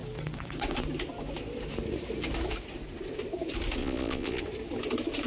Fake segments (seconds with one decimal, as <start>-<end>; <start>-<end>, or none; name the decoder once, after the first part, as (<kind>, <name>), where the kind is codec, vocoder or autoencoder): 3.8-4.4 (vocoder, Vocos)